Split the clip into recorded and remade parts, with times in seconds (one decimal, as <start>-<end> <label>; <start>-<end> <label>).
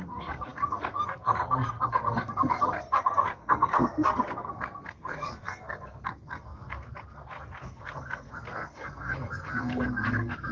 0.0-10.5 remade